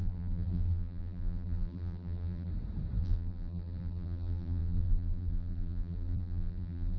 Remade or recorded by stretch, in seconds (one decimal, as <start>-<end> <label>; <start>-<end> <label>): 0.0-2.5 remade; 2.5-3.0 recorded; 3.0-7.0 remade

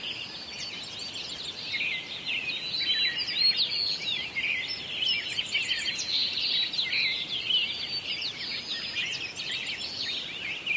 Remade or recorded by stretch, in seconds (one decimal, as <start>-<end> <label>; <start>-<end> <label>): 0.0-10.8 recorded